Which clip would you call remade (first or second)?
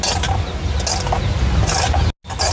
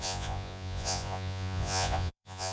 second